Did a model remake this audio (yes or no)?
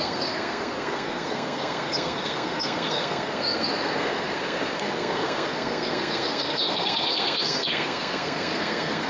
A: yes